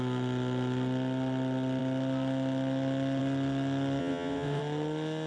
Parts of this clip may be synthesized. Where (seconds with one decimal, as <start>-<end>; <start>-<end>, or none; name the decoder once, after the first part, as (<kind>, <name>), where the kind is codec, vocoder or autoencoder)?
4.0-4.6 (vocoder, WaveNeXt)